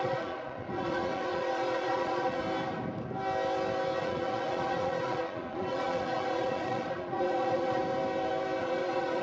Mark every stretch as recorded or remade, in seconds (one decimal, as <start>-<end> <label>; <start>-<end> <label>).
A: 0.0-2.4 remade; 2.4-4.0 recorded; 4.0-7.8 remade; 7.8-8.6 recorded; 8.6-9.2 remade